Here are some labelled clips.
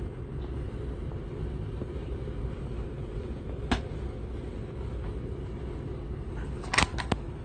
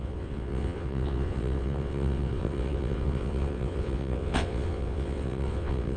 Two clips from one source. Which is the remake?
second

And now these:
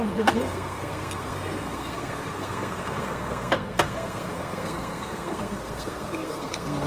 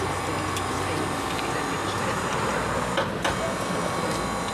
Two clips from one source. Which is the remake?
first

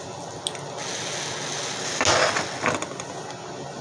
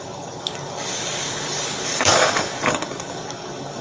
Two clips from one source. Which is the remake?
second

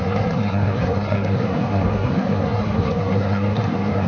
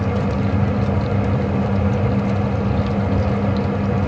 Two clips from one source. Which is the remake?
first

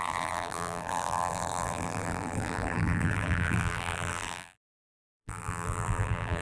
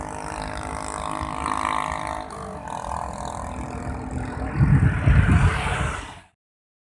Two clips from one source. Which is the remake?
first